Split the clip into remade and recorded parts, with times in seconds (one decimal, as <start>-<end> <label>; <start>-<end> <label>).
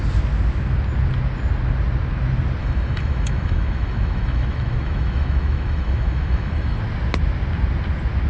0.0-2.6 recorded; 2.6-6.8 remade; 6.8-8.3 recorded